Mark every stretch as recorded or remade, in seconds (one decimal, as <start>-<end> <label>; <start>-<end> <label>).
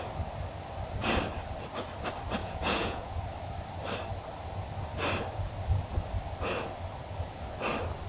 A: 0.0-2.4 recorded; 2.4-3.2 remade; 3.2-8.1 recorded